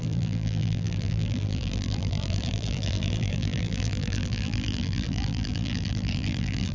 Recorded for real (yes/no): no